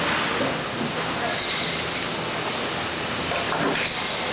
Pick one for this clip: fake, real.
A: real